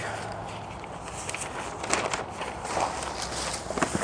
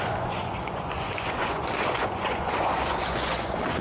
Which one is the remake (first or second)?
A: second